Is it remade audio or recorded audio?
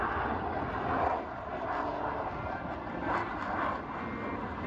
recorded